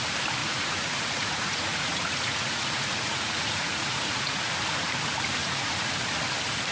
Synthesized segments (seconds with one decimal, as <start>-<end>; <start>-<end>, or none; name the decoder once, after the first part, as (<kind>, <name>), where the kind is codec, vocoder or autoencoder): 0.4-4.4 (vocoder, Vocos); 5.4-5.9